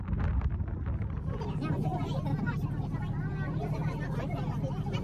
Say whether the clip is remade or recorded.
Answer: recorded